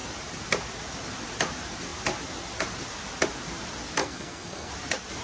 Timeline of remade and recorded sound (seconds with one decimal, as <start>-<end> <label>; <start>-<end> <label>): 0.0-4.0 recorded; 4.0-4.7 remade; 4.7-5.2 recorded